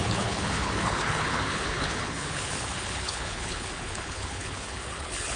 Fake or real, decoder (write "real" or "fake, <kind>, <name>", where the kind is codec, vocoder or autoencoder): fake, codec, HILCodec